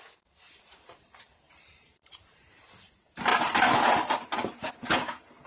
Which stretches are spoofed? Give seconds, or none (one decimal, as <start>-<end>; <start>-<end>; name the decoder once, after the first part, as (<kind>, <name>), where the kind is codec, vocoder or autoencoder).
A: 0.0-3.3 (vocoder, BigVGAN v2); 4.7-5.5